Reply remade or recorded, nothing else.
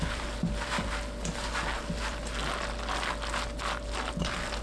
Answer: recorded